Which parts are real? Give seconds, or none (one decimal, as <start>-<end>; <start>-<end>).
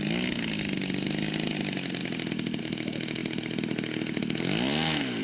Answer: 0.0-5.2